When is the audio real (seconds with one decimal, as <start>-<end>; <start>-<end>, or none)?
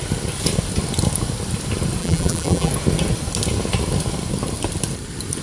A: 0.0-2.0; 2.7-5.4